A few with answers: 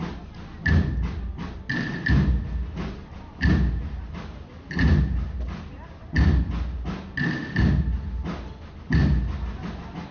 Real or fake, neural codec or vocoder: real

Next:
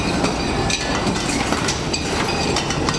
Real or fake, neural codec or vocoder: real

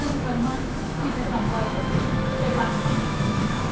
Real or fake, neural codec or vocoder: fake, autoencoder, DAC-VAE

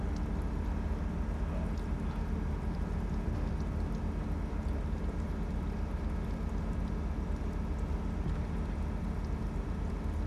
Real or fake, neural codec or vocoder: real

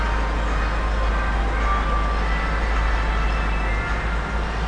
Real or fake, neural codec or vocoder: real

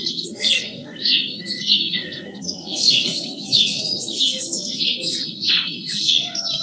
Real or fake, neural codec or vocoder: fake, codec, SNAC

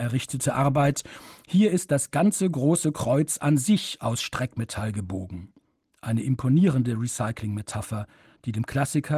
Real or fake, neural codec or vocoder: real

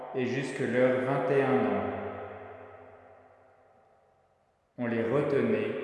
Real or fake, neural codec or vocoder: real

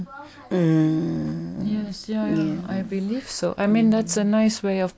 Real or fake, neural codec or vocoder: real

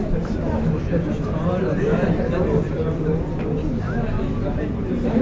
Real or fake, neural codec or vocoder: real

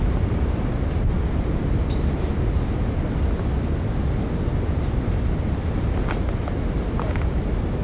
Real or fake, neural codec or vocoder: real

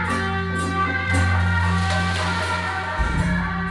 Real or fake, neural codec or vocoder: real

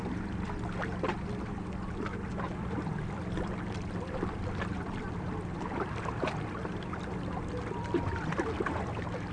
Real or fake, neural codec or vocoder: real